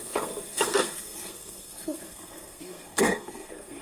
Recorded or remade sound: remade